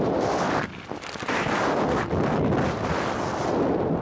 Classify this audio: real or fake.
real